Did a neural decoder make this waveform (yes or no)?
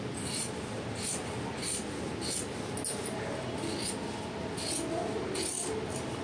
no